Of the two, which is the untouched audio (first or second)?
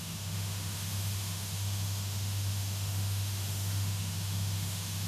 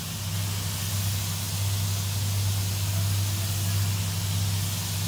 second